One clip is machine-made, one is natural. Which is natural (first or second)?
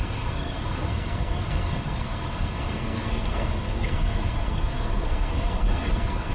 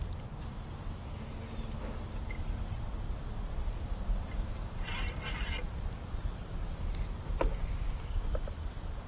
second